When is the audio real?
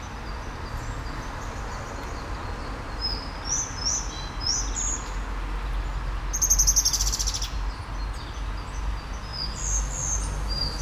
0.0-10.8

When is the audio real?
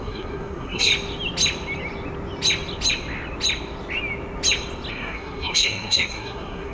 0.9-4.9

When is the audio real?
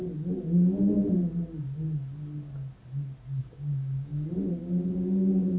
0.0-3.4; 4.1-4.9